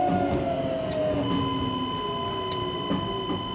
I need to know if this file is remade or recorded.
recorded